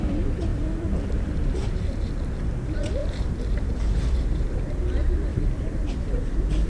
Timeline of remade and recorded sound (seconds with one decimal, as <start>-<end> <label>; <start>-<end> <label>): 0.0-0.5 recorded; 0.5-2.1 remade; 2.1-3.0 recorded; 3.0-4.6 remade; 4.6-5.3 recorded; 5.3-5.9 remade; 5.9-6.7 recorded